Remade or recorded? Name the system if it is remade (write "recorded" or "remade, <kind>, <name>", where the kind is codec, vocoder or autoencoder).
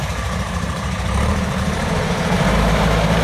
remade, vocoder, BigVGAN v2